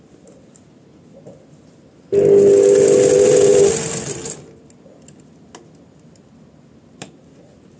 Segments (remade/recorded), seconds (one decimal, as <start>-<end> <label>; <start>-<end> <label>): 0.0-7.8 recorded